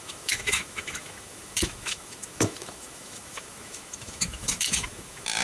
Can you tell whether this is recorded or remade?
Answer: remade